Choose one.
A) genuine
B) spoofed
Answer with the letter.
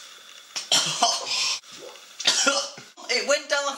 B